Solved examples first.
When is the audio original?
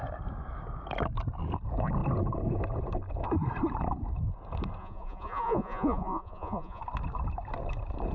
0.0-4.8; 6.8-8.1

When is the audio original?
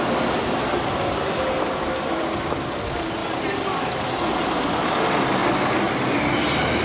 0.0-6.8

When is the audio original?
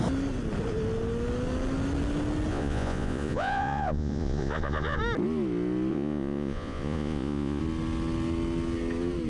0.0-2.5; 5.0-5.9; 7.6-9.3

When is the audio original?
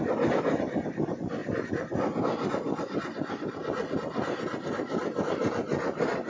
0.0-6.3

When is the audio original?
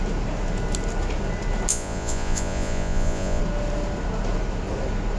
0.0-1.7; 3.4-5.2